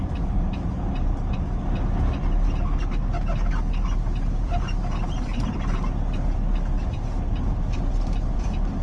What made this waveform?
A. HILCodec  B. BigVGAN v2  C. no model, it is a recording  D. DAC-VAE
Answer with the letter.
C